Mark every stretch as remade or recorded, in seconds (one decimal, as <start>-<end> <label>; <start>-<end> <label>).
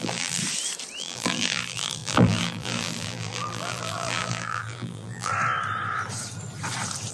0.0-0.4 remade; 0.4-1.0 recorded; 1.0-5.3 remade; 5.3-7.1 recorded